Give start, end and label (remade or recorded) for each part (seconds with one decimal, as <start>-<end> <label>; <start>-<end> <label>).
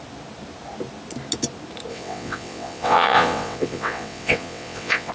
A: 0.0-1.9 recorded; 1.9-5.1 remade